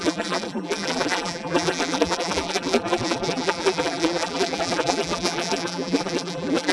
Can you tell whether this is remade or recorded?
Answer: remade